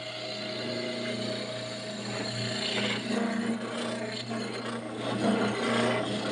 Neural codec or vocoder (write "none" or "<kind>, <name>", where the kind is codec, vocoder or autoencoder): none